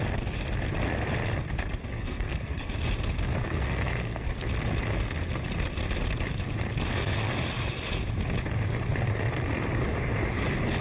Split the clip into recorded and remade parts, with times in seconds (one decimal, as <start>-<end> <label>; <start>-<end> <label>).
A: 0.0-1.8 recorded; 1.8-2.7 remade; 2.7-3.3 recorded; 3.3-4.4 remade; 4.4-10.8 recorded

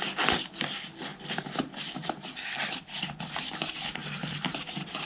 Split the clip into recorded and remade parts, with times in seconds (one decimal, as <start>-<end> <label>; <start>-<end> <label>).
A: 0.0-5.1 recorded